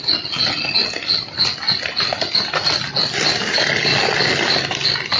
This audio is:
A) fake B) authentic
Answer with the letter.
B